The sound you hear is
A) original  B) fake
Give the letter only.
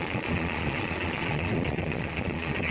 B